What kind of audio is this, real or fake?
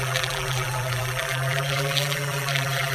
fake